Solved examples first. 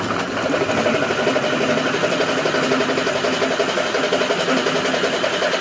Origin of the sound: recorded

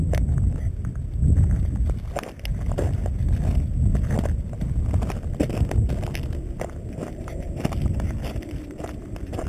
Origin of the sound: recorded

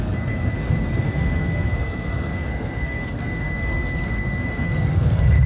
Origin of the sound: remade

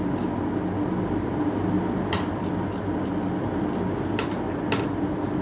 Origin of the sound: recorded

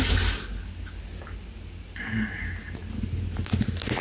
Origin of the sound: recorded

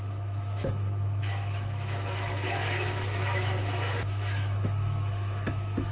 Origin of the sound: remade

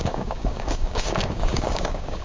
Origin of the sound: remade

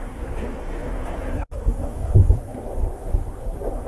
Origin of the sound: remade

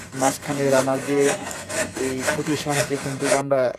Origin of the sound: remade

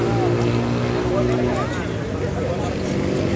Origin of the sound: recorded